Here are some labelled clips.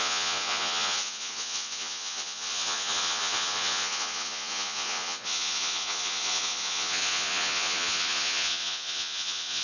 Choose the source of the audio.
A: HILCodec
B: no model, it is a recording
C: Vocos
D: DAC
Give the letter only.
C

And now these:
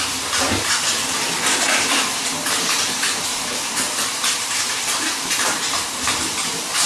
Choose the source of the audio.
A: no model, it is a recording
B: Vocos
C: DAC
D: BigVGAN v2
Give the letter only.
D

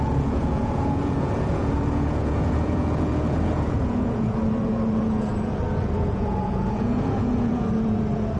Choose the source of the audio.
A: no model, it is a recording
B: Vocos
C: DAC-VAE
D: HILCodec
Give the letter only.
B